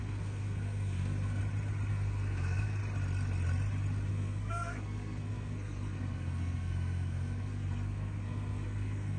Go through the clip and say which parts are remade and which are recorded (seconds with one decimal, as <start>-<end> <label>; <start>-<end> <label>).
0.0-1.4 remade; 1.4-1.9 recorded; 1.9-2.8 remade; 2.8-4.1 recorded; 4.1-9.2 remade